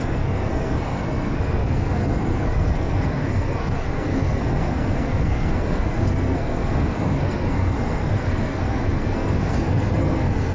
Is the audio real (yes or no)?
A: no